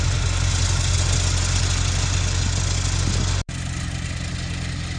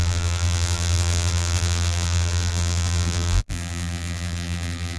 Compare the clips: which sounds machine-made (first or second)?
second